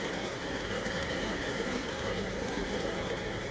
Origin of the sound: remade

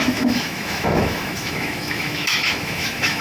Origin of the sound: remade